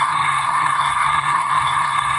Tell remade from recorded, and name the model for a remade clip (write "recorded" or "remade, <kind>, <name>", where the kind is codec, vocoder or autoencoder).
remade, codec, SNAC